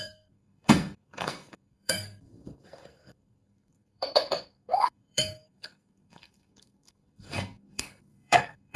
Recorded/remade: remade